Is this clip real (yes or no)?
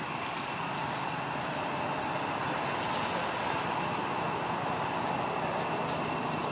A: yes